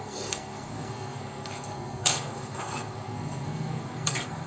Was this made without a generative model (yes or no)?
no